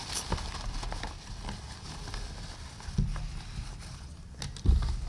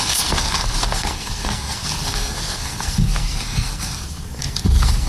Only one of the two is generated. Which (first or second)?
second